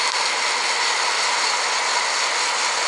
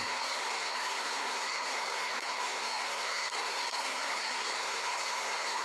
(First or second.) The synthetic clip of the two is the second